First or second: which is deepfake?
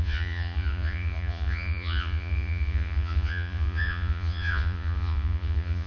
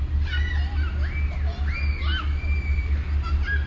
first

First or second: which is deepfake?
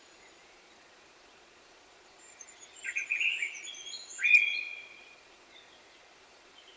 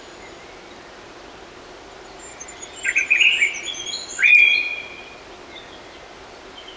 first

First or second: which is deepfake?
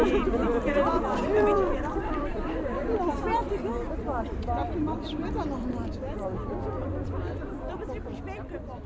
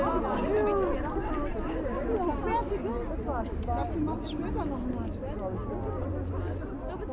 first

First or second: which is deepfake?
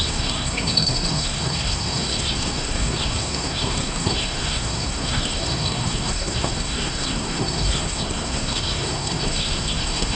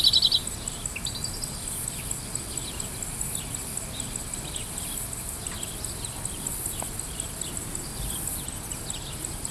first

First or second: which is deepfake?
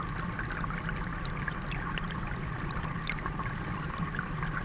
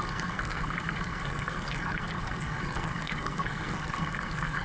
second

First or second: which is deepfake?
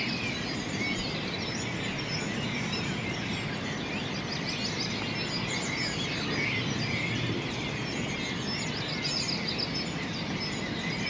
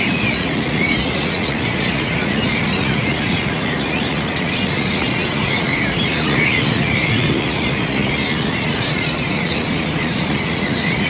second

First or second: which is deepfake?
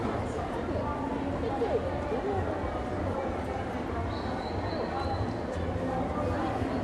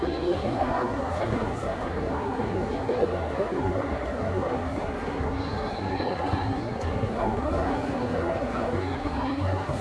second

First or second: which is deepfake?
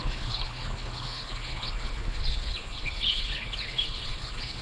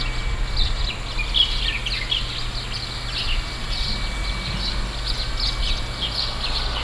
first